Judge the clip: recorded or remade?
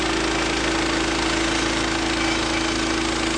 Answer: recorded